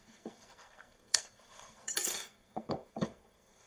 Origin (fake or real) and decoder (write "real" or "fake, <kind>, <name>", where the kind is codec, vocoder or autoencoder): fake, codec, SNAC